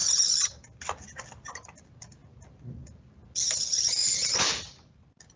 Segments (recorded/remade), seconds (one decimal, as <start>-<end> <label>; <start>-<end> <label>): 0.0-5.4 recorded